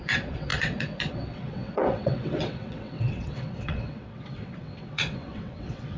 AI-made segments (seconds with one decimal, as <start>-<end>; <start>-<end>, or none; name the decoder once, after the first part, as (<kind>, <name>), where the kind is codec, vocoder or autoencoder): 0.0-6.0 (vocoder, WaveNeXt)